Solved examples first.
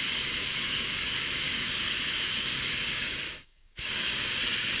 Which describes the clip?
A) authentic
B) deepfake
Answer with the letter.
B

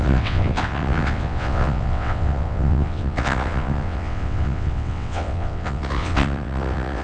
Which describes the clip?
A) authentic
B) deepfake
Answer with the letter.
B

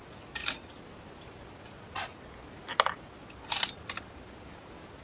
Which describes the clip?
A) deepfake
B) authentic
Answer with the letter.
B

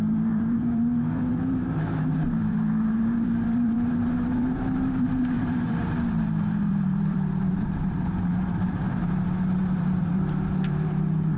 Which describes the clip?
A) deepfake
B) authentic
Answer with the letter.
A